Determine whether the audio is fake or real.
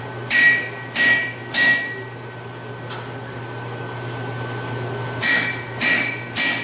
real